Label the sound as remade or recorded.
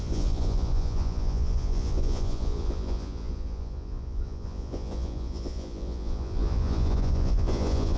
remade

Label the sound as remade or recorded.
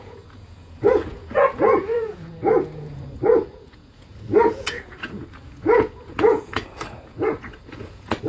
remade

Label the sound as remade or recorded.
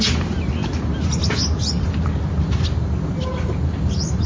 recorded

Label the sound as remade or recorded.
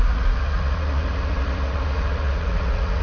remade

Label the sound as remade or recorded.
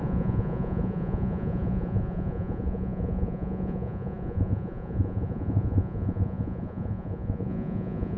remade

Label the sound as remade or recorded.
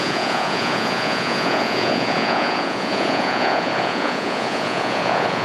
remade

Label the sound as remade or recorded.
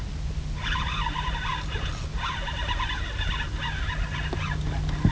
recorded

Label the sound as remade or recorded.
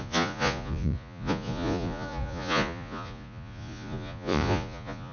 remade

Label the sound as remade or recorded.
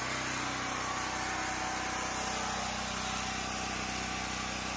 recorded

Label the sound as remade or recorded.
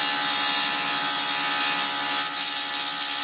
recorded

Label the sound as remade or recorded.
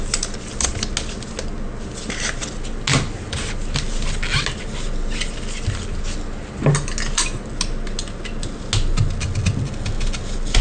recorded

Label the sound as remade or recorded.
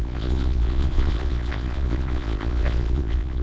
remade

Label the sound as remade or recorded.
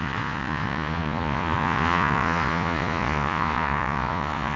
remade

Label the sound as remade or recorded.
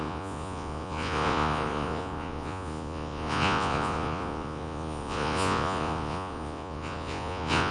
remade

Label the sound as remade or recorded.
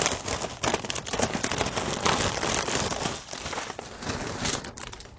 recorded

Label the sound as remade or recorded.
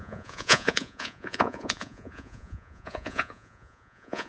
remade